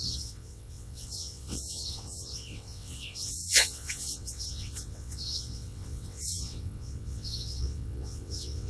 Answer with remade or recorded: remade